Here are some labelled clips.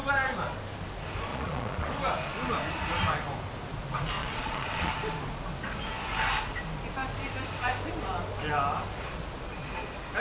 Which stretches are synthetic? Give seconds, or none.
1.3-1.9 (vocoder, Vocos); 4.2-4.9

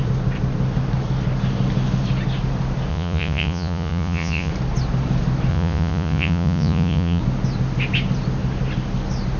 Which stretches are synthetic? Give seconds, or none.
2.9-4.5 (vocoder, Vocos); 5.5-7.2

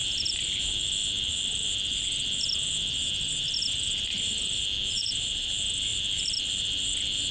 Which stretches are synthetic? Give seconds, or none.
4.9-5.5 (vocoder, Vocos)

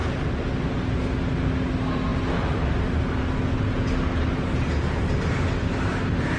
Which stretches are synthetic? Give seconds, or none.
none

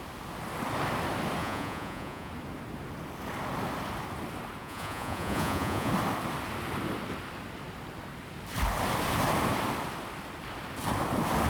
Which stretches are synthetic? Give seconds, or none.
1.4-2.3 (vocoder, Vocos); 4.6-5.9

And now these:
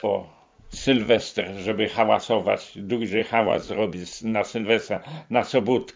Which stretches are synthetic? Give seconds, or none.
0.5-1.4 (vocoder, Vocos); 3.2-5.6

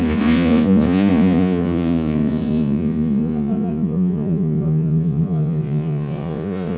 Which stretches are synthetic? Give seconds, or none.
0.0-6.8 (vocoder, Vocos)